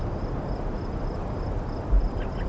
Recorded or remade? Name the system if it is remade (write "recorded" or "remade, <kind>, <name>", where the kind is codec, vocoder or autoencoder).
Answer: recorded